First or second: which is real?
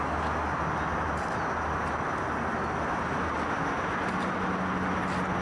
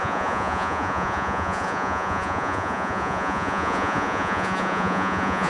first